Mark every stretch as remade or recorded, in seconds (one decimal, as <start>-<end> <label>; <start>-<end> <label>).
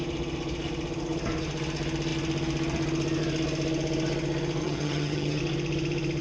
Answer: 0.0-4.6 recorded; 4.6-5.4 remade; 5.4-6.2 recorded